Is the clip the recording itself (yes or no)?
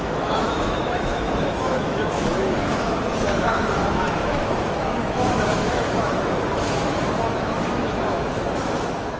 no